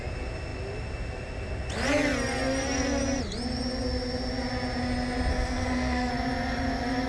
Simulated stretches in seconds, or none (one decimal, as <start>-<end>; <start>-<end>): 5.3-6.1